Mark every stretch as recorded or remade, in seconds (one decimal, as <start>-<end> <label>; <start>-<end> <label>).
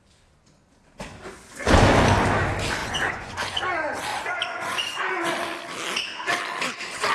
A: 0.0-2.8 recorded; 2.8-3.6 remade; 3.6-4.1 recorded; 4.1-5.1 remade; 5.1-7.1 recorded